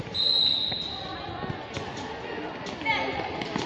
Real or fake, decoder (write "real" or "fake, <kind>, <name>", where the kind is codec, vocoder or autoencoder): real